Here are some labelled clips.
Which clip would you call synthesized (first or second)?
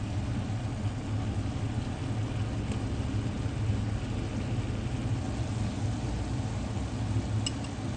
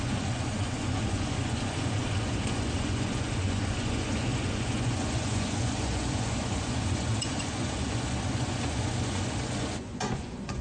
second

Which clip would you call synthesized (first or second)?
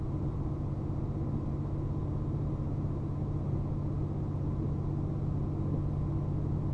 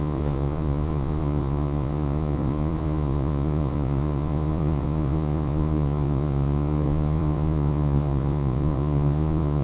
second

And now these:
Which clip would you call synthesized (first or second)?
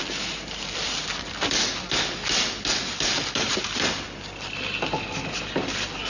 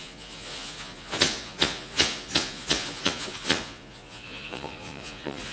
second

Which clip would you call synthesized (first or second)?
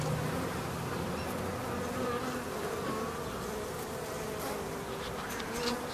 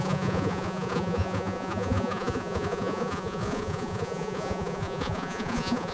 second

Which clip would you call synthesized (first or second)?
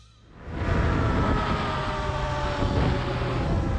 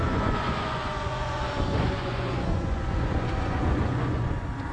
second